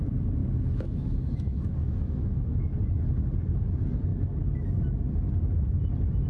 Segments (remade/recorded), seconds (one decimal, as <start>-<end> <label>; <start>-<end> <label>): 0.0-0.4 recorded; 0.4-2.7 remade; 2.7-6.3 recorded

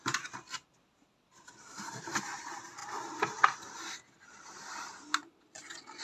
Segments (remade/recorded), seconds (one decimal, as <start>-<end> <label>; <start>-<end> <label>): 0.0-6.0 recorded

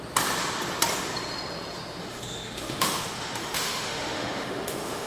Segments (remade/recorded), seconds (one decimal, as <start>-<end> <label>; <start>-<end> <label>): 0.0-2.0 recorded; 2.0-5.1 remade

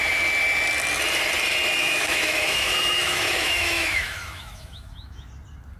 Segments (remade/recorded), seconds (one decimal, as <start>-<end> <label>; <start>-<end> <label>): 0.0-1.8 recorded; 1.8-5.3 remade; 5.3-5.8 recorded

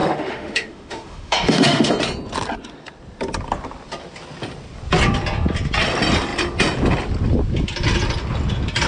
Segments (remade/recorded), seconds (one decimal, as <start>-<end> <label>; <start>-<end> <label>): 0.0-1.9 remade; 1.9-8.9 recorded

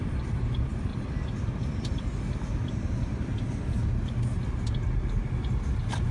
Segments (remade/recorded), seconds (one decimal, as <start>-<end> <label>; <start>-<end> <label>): 0.0-6.1 recorded